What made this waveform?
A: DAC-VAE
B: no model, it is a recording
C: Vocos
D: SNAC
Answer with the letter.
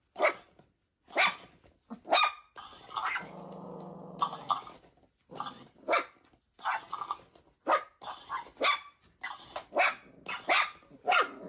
B